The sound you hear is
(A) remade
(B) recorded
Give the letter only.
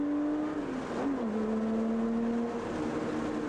B